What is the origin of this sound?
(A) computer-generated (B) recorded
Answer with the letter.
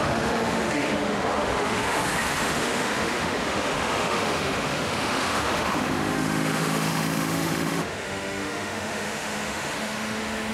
A